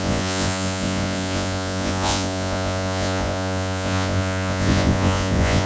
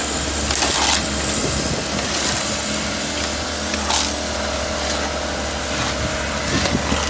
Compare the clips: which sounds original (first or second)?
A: second